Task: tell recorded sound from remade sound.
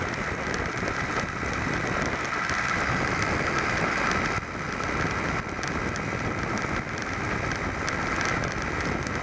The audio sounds recorded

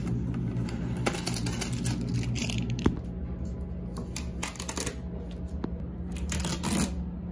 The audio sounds recorded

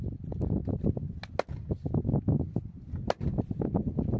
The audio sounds recorded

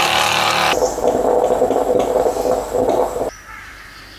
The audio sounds recorded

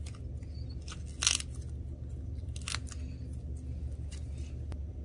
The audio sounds recorded